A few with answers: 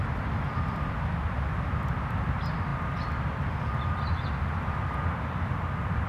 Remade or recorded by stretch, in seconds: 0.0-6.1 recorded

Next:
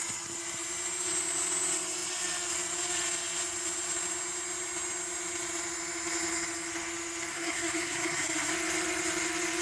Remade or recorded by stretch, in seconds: 0.0-7.3 recorded; 7.3-8.5 remade; 8.5-9.6 recorded

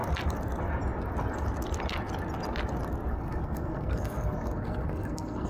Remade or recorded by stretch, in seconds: 0.0-3.1 recorded; 3.1-5.5 remade

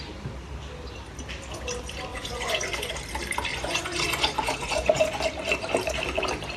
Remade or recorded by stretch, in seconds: 0.0-2.1 recorded; 2.1-2.9 remade; 2.9-3.5 recorded; 3.5-5.2 remade; 5.2-6.6 recorded

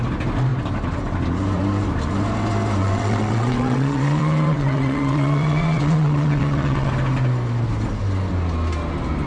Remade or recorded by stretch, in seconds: 0.0-2.8 recorded; 2.8-6.9 remade; 6.9-9.3 recorded

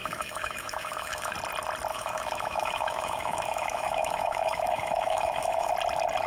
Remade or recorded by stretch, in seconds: 0.0-1.3 remade; 1.3-1.9 recorded; 1.9-5.7 remade; 5.7-6.3 recorded

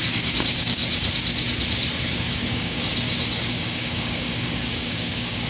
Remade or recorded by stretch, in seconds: 0.0-0.8 remade; 0.8-2.4 recorded; 2.4-2.9 remade; 2.9-3.4 recorded; 3.4-5.5 remade